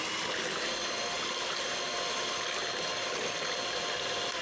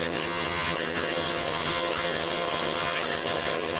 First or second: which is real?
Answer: first